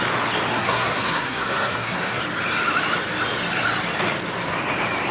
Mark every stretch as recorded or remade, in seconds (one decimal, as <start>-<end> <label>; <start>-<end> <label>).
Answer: 0.0-0.5 recorded; 0.5-2.2 remade; 2.2-5.1 recorded